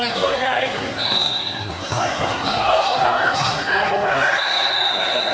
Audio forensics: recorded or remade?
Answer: remade